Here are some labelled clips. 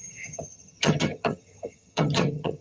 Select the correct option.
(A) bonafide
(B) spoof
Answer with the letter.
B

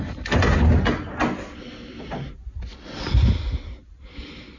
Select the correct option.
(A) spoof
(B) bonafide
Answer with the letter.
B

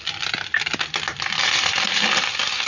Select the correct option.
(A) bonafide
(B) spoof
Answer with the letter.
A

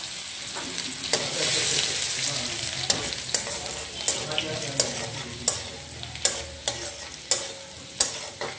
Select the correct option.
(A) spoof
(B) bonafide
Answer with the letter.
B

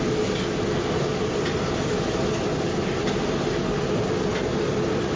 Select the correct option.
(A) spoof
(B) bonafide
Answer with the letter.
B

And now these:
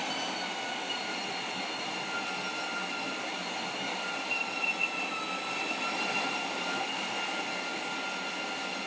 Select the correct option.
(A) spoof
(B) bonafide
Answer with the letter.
B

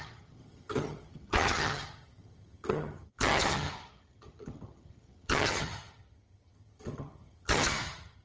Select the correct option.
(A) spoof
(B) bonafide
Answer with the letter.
A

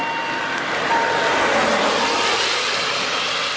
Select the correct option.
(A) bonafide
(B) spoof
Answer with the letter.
A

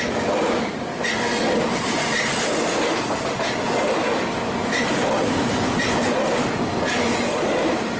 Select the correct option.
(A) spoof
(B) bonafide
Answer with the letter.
B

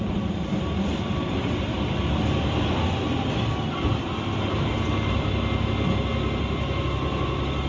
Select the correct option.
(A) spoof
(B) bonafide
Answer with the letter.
B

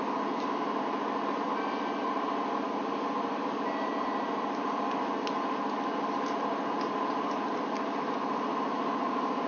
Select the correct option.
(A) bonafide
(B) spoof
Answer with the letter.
A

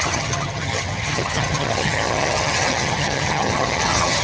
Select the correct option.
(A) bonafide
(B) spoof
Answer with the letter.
B